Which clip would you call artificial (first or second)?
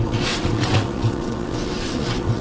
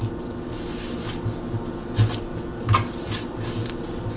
first